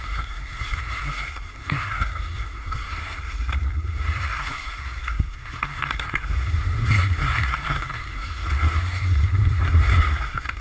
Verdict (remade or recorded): remade